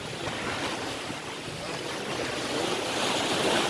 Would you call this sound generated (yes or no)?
yes